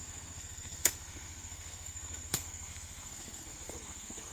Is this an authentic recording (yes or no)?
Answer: no